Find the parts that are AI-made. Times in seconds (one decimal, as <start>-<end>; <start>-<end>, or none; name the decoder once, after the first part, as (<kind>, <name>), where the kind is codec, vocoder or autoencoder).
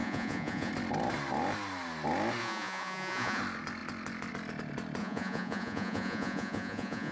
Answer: 0.0-0.7 (vocoder, Vocos); 2.4-3.4; 5.0-7.1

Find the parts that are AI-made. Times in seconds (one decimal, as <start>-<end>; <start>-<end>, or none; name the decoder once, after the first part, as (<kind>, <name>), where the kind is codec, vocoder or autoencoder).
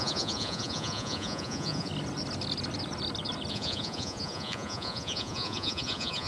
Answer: 0.0-1.9 (vocoder, Vocos); 3.5-6.3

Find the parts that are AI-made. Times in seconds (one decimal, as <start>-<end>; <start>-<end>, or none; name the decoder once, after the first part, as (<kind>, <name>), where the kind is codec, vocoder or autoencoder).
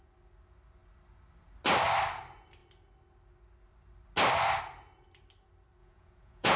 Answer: 5.8-6.6 (vocoder, Vocos)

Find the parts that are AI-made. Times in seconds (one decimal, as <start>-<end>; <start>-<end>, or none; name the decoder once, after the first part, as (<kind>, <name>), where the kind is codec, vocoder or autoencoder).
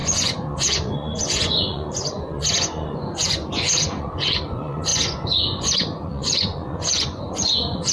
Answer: 0.0-7.9 (vocoder, Vocos)